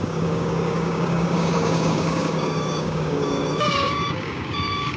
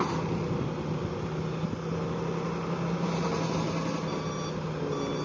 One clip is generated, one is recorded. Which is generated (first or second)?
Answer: first